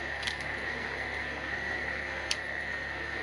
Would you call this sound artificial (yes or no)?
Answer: yes